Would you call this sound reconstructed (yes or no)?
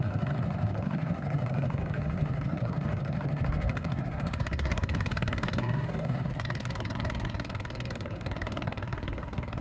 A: yes